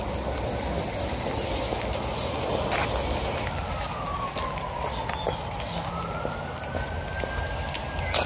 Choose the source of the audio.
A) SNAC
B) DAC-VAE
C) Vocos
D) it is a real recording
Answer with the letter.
D